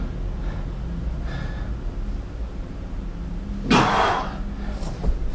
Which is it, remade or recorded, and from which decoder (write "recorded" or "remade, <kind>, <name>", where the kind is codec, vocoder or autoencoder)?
recorded